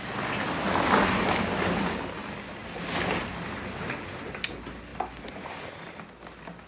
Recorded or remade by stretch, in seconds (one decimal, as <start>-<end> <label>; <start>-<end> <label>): 0.0-6.7 recorded